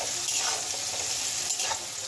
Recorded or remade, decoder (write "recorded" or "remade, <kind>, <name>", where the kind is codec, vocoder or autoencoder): recorded